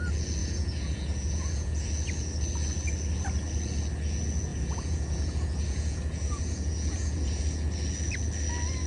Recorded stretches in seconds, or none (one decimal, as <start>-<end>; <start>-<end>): 0.0-0.4; 1.9-4.5; 7.4-8.9